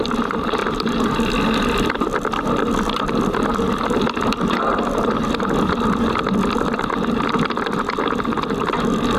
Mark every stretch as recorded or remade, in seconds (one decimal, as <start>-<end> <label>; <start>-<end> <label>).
0.0-9.2 recorded